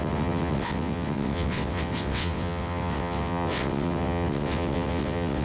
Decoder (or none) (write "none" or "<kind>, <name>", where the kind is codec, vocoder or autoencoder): vocoder, WaveNeXt